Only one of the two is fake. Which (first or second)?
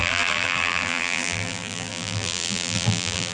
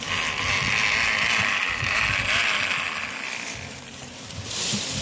first